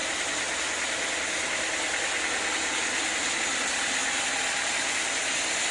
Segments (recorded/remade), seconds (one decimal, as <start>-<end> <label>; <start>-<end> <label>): 0.0-5.7 recorded